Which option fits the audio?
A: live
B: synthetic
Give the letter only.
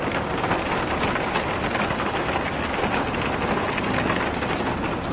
A